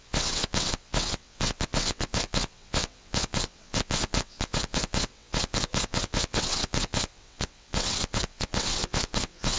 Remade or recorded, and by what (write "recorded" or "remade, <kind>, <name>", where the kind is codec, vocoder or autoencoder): remade, vocoder, WaveNeXt